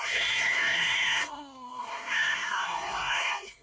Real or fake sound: fake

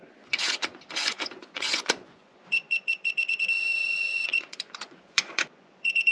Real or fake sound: fake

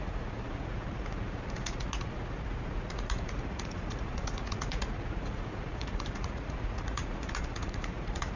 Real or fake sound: fake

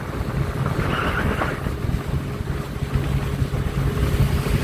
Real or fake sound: real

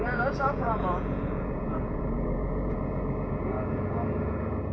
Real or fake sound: fake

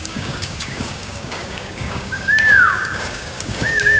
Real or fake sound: fake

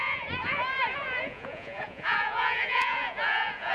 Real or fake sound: fake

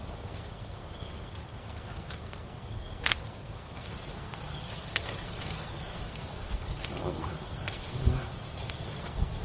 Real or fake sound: fake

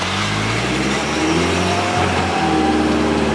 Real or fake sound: real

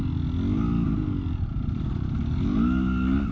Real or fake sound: real